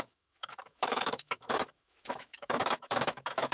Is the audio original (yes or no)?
no